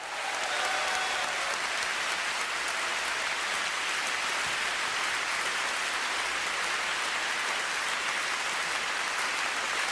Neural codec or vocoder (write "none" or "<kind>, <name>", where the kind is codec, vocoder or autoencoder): none